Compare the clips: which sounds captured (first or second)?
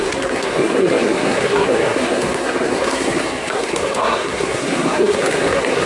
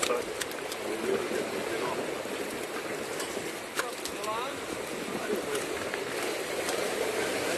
second